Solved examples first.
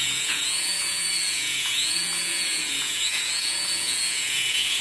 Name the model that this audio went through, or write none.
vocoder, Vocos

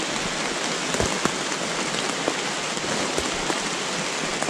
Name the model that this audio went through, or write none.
none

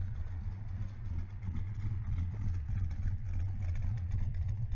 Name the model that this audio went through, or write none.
vocoder, Vocos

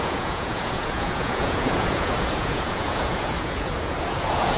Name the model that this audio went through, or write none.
vocoder, Vocos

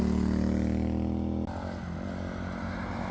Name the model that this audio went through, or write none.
none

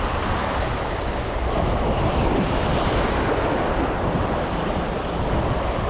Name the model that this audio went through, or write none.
none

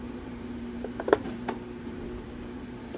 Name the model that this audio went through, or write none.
vocoder, BigVGAN v2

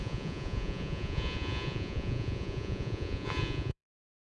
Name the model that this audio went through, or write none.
vocoder, Vocos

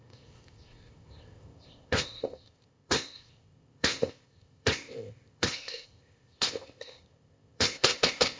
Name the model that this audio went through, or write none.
codec, ZipCodec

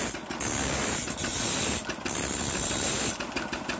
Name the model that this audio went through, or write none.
none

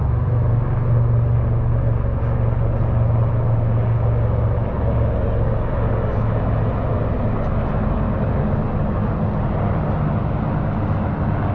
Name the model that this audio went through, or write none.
none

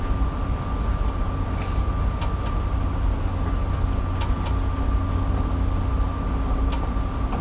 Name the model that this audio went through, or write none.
none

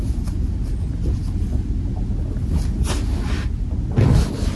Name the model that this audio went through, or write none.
none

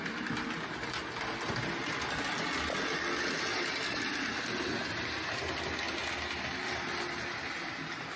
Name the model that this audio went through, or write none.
none